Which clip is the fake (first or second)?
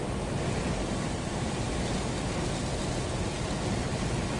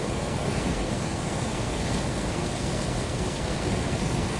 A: second